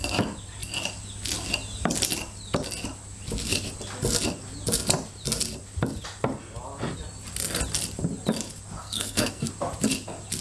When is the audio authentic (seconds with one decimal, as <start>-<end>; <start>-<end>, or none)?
0.0-8.8; 9.5-10.4